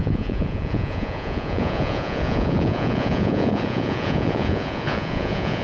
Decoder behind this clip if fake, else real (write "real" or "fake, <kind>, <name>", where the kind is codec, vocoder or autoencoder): fake, vocoder, Vocos